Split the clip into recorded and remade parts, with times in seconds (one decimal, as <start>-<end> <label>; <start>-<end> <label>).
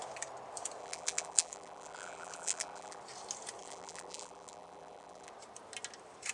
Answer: 0.0-0.8 recorded; 0.8-3.0 remade; 3.0-3.6 recorded; 3.6-5.3 remade; 5.3-6.3 recorded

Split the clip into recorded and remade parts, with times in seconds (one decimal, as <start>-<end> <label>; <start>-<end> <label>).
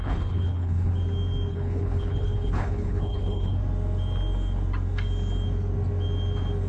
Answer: 0.0-0.9 remade; 0.9-1.5 recorded; 1.5-3.6 remade; 3.6-6.7 recorded